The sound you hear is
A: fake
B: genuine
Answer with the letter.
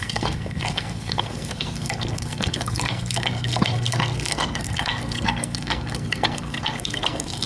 A